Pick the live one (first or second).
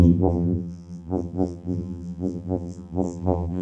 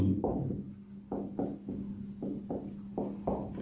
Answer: second